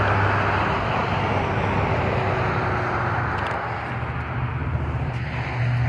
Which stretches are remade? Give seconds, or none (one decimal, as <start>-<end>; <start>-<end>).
none